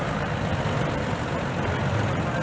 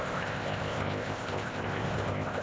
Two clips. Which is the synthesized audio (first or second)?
second